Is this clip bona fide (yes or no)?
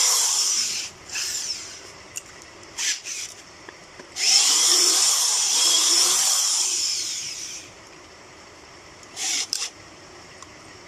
no